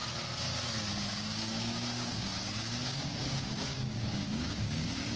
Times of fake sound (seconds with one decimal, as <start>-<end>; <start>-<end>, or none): 1.1-5.2